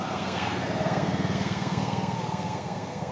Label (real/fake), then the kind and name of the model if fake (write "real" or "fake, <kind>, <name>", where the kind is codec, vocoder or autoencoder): fake, codec, SNAC